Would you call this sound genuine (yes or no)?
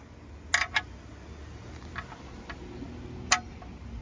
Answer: yes